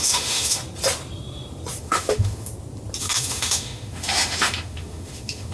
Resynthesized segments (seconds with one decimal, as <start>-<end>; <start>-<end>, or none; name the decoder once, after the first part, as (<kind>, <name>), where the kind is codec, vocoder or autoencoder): 0.0-0.6 (autoencoder, DAC-VAE); 1.8-2.5; 3.0-5.5